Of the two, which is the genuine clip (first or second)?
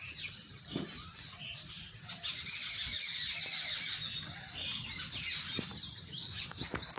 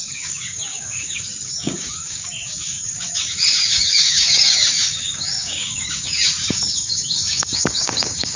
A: first